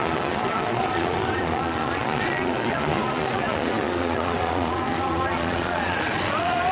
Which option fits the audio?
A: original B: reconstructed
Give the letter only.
B